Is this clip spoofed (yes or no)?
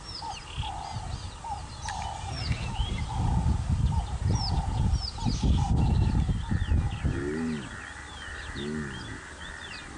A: no